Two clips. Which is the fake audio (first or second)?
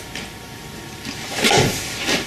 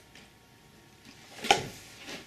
first